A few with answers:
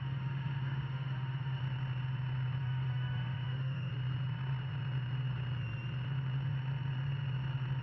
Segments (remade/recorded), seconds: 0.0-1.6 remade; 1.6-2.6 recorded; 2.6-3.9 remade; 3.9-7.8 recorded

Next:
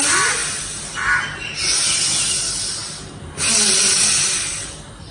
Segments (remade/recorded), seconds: 0.0-5.1 recorded

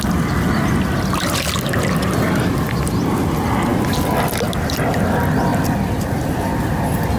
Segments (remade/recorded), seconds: 0.0-7.2 recorded

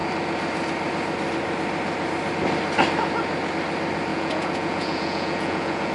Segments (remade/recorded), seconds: 0.0-4.1 recorded; 4.1-5.9 remade

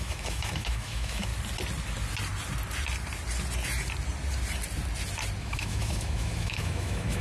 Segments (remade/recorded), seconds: 0.0-1.3 remade; 1.3-5.4 recorded; 5.4-7.2 remade